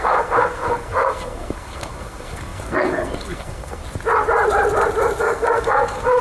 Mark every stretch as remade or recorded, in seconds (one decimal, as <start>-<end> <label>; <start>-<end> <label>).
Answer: 0.0-3.8 remade; 3.8-5.2 recorded; 5.2-6.2 remade